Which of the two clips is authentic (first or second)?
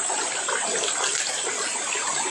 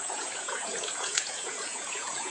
first